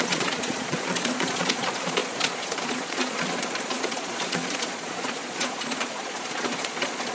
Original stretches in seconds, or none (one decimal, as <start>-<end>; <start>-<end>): none